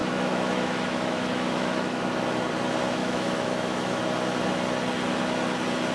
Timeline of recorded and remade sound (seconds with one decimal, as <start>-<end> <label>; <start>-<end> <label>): 0.0-2.1 remade; 2.1-3.0 recorded; 3.0-4.0 remade; 4.0-5.9 recorded